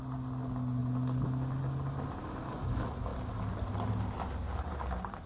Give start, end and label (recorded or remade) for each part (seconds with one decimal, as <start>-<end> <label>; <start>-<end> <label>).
0.0-5.3 recorded